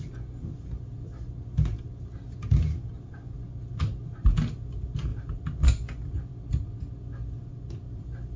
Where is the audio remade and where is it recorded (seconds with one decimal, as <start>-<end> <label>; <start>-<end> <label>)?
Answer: 0.0-8.4 recorded